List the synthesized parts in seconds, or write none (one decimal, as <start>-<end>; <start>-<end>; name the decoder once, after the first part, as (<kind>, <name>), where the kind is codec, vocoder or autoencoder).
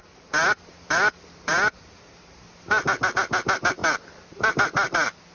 none